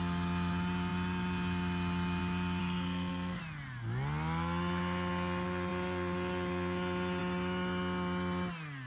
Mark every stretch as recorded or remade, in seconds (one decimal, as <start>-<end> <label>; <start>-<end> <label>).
0.0-2.6 recorded; 2.6-3.4 remade; 3.4-8.9 recorded